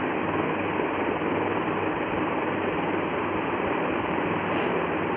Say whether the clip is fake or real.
real